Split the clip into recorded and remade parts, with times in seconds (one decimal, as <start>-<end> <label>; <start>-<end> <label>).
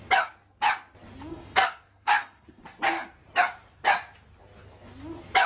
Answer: 0.0-1.3 recorded; 1.3-2.6 remade; 2.6-5.5 recorded